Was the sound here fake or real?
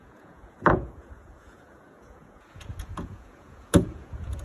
fake